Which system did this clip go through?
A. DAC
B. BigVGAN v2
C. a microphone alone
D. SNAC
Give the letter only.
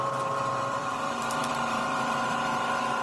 B